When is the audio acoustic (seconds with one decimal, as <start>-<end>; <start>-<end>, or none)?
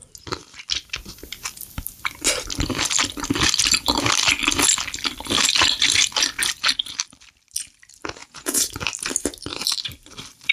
0.0-8.2; 8.7-10.5